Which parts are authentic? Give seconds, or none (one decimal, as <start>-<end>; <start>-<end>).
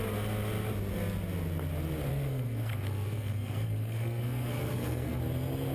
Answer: 0.0-2.1; 5.2-5.7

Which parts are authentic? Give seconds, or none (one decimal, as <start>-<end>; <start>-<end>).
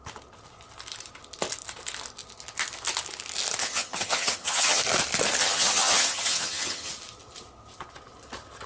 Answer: 0.0-3.6; 4.8-5.4; 6.9-8.7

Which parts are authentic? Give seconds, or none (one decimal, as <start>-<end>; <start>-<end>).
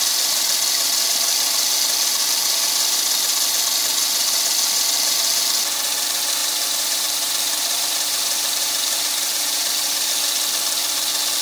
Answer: 0.0-6.4; 10.1-11.4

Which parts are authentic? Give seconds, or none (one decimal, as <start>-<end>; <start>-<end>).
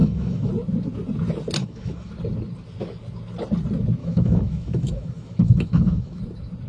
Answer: 0.5-1.6; 2.1-4.0; 6.2-6.7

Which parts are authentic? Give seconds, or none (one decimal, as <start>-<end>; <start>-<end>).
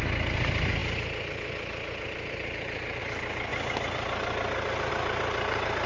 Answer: 0.0-5.9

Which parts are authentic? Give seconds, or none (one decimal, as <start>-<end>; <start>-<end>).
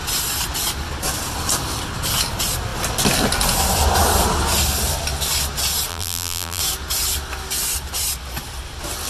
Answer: 0.0-5.9; 6.6-9.1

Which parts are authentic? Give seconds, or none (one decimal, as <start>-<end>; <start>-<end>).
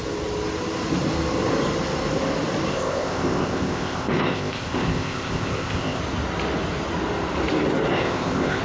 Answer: 0.0-2.7; 6.0-7.9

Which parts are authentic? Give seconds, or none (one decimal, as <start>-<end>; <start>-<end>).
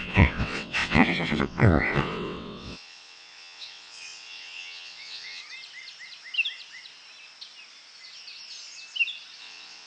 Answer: 5.4-9.4